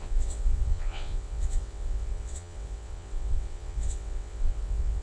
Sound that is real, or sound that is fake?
fake